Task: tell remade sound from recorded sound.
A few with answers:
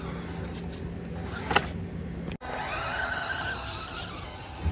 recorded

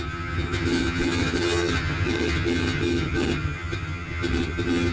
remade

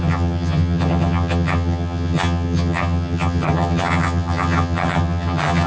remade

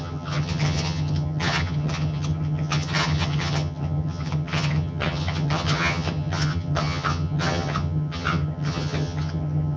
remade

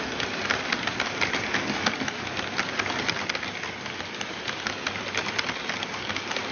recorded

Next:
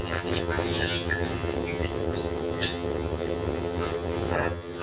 remade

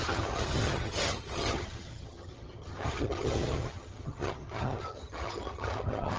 remade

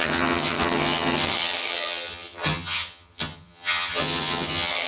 remade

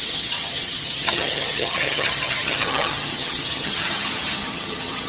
remade